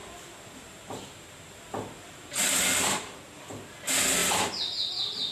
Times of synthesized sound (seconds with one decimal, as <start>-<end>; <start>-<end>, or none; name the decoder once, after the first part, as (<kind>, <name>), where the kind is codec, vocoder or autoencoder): 0.0-3.2 (vocoder, BigVGAN v2)